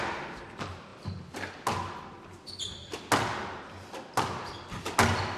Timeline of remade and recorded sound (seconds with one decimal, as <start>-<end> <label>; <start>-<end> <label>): 0.0-5.4 recorded